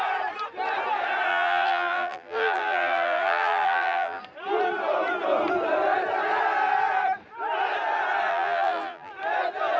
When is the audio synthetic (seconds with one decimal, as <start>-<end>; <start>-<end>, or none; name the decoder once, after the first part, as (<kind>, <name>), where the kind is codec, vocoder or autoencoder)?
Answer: 1.3-4.2 (vocoder, BigVGAN v2); 8.3-9.1

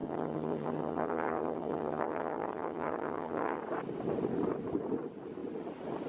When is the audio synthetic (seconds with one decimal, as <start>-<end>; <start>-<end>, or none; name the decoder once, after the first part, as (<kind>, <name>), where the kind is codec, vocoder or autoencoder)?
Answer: 0.0-3.6 (vocoder, HiFi-GAN)

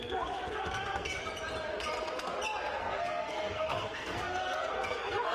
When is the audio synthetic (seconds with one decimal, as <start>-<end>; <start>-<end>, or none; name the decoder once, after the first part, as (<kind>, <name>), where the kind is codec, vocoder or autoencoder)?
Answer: 0.0-1.2 (codec, SNAC); 2.6-5.3

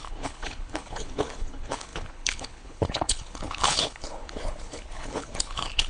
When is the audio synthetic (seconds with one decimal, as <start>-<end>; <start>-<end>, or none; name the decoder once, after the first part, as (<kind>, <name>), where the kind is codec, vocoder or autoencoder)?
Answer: 0.0-5.9 (codec, HILCodec)

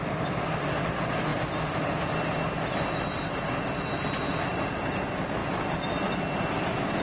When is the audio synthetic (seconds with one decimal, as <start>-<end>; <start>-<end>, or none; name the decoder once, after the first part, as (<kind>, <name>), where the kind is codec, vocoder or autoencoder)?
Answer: none

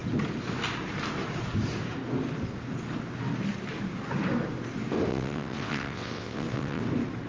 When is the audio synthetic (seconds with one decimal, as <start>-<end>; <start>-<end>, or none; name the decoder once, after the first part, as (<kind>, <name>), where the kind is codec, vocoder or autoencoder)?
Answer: 5.1-6.8 (vocoder, WaveNeXt)

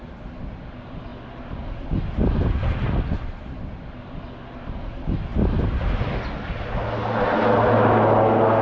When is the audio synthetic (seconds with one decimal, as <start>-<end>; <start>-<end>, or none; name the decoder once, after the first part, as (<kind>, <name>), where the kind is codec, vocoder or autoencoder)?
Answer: 1.1-4.2 (vocoder, BigVGAN v2)

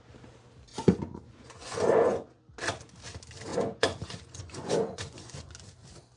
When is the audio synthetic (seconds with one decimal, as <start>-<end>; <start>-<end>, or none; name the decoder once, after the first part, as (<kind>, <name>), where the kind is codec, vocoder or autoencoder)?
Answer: 0.7-2.4 (vocoder, Vocos); 3.5-5.5